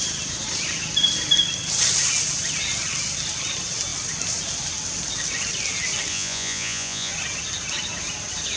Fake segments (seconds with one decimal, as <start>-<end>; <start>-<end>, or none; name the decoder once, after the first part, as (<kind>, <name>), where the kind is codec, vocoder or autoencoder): 6.1-7.1 (vocoder, Vocos)